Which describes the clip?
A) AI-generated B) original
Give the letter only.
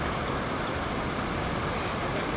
B